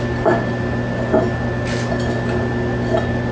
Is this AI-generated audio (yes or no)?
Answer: no